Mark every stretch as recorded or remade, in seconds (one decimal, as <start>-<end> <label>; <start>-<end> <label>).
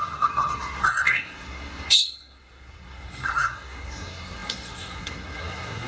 0.0-5.9 remade